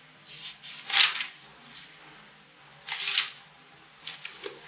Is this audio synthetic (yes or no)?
no